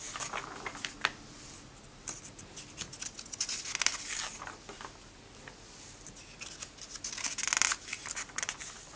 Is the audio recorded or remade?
recorded